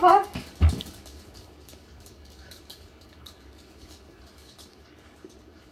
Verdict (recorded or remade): remade